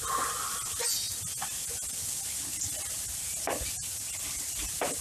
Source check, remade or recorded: recorded